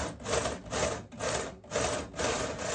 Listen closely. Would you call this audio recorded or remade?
recorded